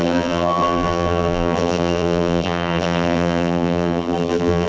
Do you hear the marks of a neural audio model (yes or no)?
yes